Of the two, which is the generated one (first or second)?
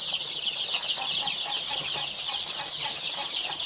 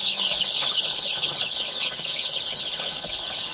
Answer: second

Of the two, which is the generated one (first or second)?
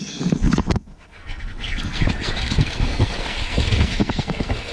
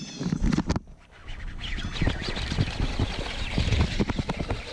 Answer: first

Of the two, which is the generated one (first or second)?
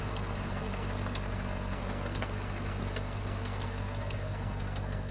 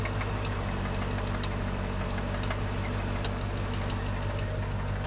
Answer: first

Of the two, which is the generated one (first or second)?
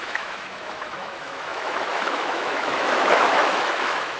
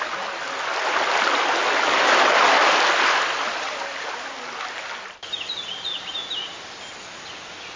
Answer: first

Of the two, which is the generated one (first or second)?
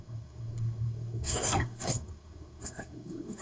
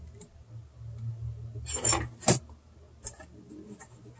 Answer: first